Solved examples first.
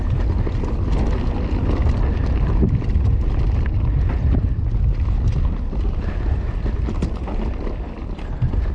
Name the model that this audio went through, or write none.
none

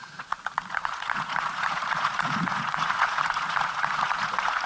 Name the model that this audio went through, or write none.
vocoder, Vocos